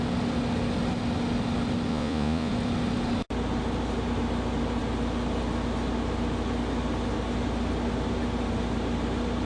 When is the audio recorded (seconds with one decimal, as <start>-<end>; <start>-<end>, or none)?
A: 0.0-1.9; 2.5-9.5